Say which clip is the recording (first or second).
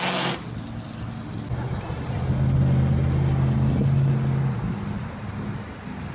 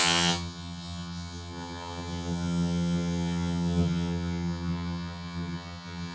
first